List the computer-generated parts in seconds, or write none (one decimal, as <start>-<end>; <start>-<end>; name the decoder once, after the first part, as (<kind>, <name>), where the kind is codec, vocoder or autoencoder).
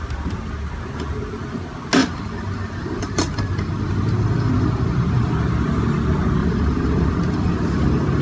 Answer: 2.0-5.3 (vocoder, BigVGAN v2); 6.4-8.2